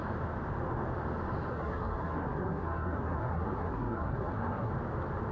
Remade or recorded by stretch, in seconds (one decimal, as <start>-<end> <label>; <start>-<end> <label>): 0.0-1.5 recorded; 1.5-4.7 remade; 4.7-5.3 recorded